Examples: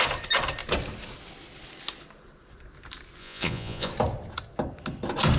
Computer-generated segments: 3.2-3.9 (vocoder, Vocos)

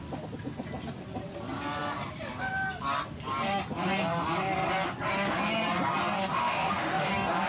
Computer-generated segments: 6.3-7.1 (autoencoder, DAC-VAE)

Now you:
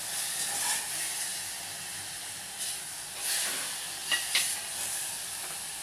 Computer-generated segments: 4.0-5.8 (vocoder, BigVGAN v2)

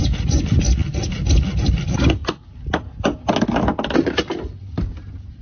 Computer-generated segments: none

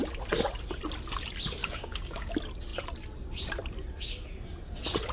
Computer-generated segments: 1.6-2.3 (codec, DAC)